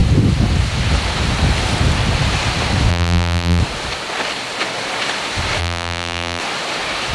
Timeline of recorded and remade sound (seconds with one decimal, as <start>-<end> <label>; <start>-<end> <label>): 0.0-2.9 recorded; 2.9-3.6 remade; 3.6-5.6 recorded; 5.6-6.4 remade; 6.4-7.1 recorded